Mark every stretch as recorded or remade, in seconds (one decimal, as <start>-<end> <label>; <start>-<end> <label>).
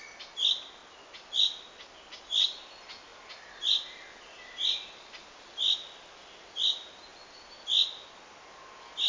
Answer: 0.0-9.1 recorded